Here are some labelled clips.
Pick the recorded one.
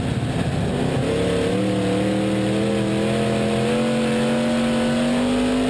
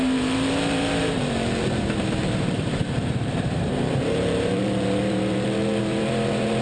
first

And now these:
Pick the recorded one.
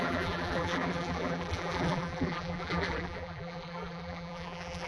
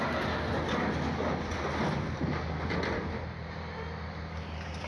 second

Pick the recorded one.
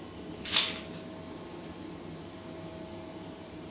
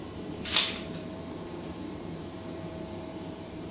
first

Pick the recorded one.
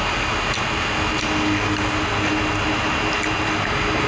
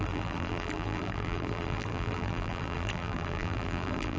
first